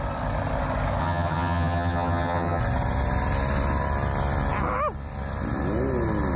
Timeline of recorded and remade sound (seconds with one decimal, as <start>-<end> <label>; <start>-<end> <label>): 0.0-1.0 recorded; 1.0-2.6 remade; 2.6-6.4 recorded